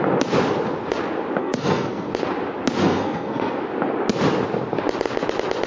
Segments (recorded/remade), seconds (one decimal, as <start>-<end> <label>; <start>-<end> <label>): 0.0-1.4 recorded; 1.4-2.1 remade; 2.1-2.8 recorded; 2.8-3.6 remade; 3.6-5.7 recorded